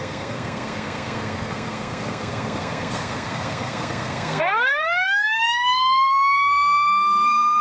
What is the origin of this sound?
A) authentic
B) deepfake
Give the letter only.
B